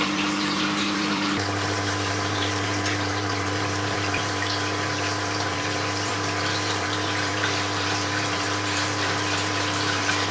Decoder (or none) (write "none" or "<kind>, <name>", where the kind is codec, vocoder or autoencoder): vocoder, BigVGAN v2